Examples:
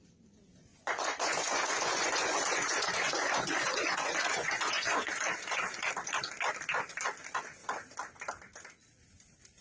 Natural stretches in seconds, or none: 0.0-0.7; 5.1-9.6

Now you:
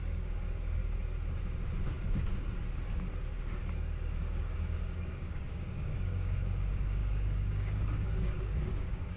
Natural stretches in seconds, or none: 0.8-4.2

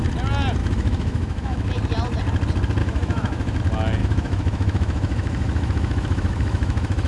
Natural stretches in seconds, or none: 0.0-0.6; 1.7-2.8; 3.6-4.0

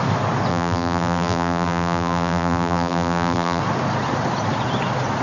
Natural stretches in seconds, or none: 0.0-0.5; 3.6-5.2

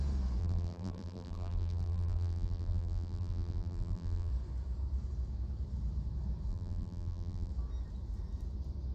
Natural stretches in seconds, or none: 0.0-0.4; 4.3-6.5; 7.5-8.9

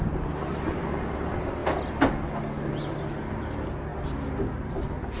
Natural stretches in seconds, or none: 0.0-5.2